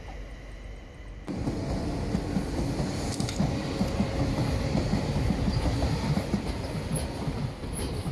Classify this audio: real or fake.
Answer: real